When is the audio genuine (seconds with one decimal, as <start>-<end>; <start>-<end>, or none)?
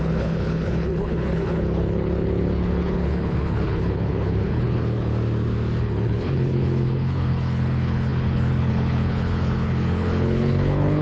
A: 5.1-5.8